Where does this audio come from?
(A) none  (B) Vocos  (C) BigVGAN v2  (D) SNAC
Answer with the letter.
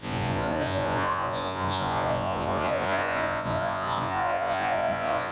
B